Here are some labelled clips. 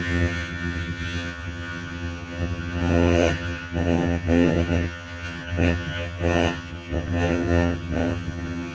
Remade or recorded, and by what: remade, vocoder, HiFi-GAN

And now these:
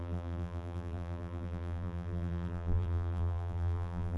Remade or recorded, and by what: remade, vocoder, BigVGAN v2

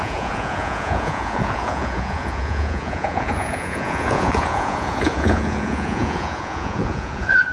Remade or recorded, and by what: remade, vocoder, Vocos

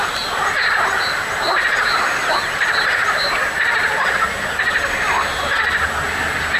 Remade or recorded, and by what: recorded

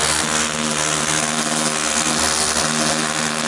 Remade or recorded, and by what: recorded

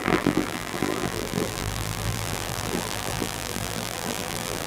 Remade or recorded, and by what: remade, vocoder, BigVGAN v2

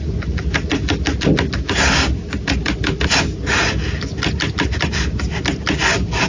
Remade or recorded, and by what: recorded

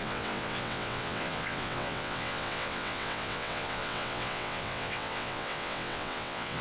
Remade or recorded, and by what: remade, vocoder, WaveNeXt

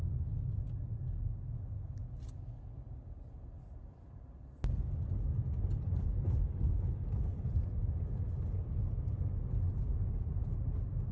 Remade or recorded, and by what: recorded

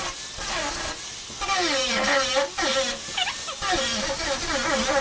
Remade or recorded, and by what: recorded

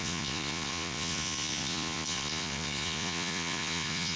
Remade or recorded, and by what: remade, vocoder, Vocos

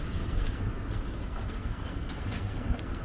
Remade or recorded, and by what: remade, codec, SNAC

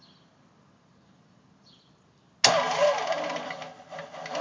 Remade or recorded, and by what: recorded